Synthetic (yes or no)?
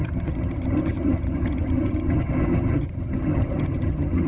yes